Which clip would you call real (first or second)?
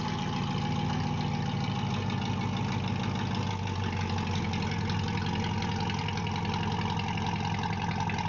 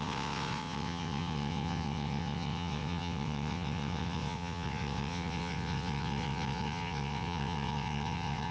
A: first